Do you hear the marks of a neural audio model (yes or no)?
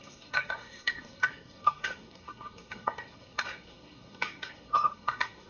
yes